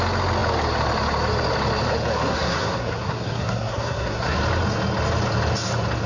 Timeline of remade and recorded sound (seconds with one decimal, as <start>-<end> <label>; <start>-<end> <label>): 0.0-2.3 recorded; 2.3-4.4 remade; 4.4-6.1 recorded